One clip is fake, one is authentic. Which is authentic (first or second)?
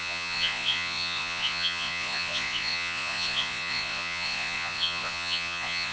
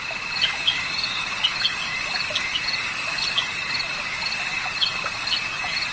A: second